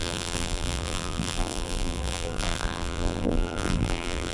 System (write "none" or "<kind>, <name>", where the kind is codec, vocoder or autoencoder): vocoder, BigVGAN v2